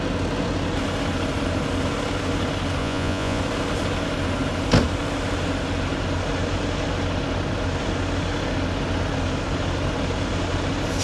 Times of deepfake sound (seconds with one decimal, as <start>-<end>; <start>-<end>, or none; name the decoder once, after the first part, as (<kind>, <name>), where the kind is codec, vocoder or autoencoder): 2.8-3.4 (vocoder, Vocos)